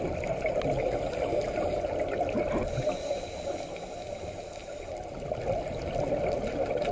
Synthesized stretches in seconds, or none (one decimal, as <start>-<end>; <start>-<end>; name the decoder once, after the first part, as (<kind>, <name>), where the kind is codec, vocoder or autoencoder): 4.6-6.0 (vocoder, BigVGAN v2)